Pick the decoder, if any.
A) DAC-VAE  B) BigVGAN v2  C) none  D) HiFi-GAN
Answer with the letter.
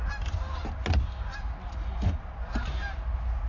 C